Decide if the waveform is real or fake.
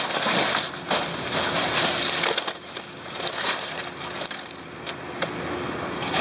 real